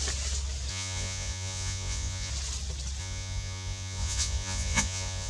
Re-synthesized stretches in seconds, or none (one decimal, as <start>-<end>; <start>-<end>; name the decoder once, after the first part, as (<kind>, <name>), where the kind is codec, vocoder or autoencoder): 0.7-2.3 (vocoder, Vocos); 3.0-5.3